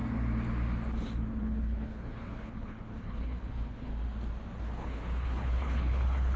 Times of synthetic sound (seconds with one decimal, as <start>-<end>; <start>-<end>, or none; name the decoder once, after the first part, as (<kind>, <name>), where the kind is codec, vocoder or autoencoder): 1.4-3.9 (codec, HILCodec); 4.6-6.4